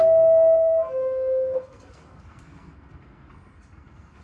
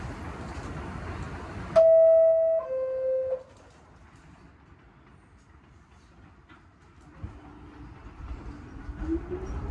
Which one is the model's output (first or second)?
first